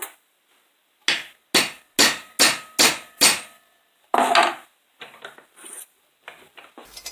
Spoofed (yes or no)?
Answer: no